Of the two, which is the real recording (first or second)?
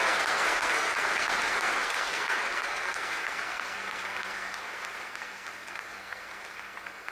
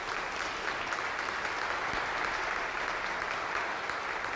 second